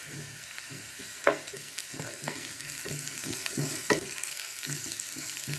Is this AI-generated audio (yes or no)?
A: yes